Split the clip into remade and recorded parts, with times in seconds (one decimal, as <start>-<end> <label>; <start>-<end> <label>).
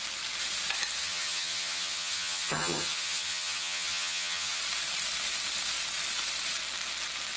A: 0.0-1.0 recorded; 1.0-4.6 remade; 4.6-7.4 recorded